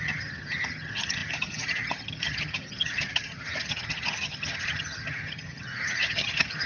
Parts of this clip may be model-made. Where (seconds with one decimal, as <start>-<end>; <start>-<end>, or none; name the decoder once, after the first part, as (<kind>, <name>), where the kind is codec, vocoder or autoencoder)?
0.0-6.7 (vocoder, HiFi-GAN)